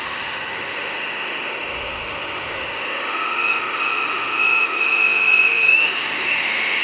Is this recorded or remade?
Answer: remade